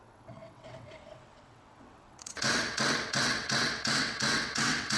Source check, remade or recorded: remade